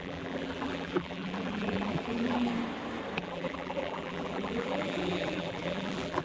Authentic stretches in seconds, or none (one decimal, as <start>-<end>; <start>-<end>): 2.5-3.2